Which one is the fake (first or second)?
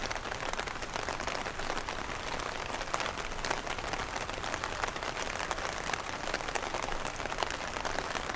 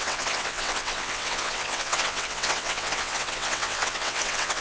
second